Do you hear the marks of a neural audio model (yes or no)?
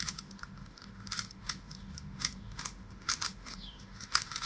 yes